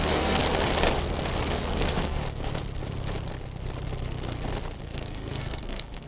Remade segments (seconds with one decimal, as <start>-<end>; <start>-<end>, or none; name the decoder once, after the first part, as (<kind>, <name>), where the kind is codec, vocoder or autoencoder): 0.0-0.4 (codec, SNAC); 1.8-2.2; 4.8-6.1